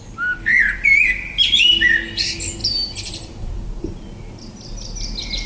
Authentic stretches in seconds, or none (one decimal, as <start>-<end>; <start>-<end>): 0.0-2.6; 3.5-5.5